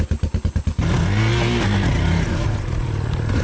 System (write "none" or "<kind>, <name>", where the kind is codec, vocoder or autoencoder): none